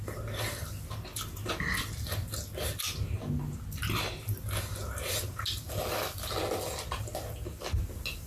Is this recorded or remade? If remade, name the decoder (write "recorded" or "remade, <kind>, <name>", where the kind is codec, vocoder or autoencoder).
recorded